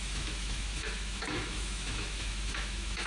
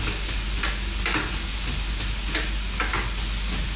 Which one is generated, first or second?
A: first